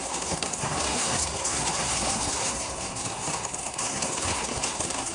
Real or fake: fake